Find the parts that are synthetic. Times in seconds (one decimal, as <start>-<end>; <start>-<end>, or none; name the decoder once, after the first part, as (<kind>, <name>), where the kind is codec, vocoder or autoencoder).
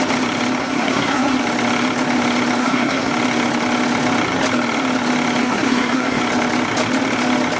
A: 0.6-1.4 (codec, SNAC); 2.6-3.1; 5.4-6.2